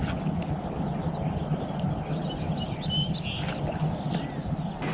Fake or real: real